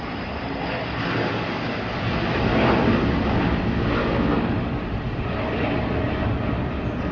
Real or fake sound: real